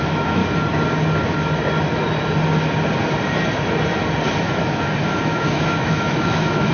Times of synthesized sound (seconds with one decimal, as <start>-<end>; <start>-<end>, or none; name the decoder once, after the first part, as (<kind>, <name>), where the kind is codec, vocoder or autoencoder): 0.0-0.4 (autoencoder, DAC-VAE); 4.4-6.7